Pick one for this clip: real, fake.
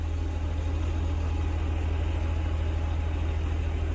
real